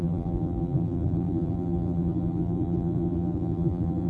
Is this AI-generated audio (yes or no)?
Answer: yes